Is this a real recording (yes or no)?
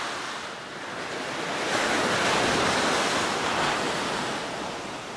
yes